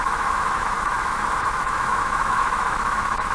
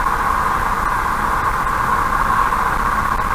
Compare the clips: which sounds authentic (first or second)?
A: second